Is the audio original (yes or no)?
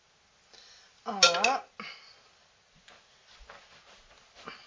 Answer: yes